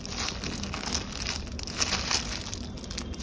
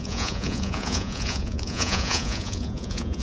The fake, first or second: second